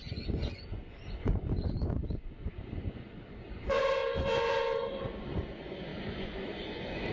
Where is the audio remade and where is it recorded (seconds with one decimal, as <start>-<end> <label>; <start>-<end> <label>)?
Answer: 0.0-7.1 remade